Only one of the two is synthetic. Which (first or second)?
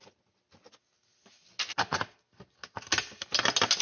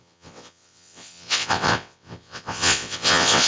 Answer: second